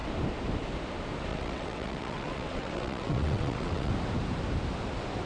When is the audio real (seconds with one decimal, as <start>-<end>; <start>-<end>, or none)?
0.0-1.3; 3.9-5.3